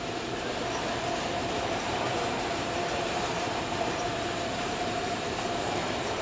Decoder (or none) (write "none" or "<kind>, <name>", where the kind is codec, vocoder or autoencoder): vocoder, BigVGAN v2